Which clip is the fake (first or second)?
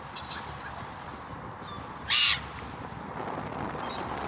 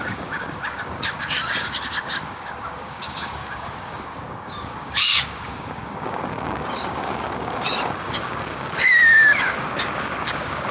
second